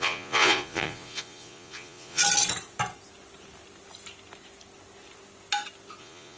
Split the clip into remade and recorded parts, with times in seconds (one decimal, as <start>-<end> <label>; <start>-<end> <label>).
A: 0.0-2.2 remade; 2.2-6.0 recorded; 6.0-6.4 remade